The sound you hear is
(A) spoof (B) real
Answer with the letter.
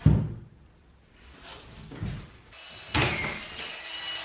B